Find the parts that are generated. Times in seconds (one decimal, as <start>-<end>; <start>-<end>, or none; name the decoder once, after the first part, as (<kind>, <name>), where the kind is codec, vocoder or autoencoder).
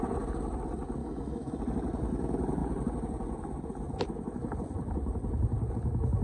1.0-1.6 (autoencoder, DAC-VAE)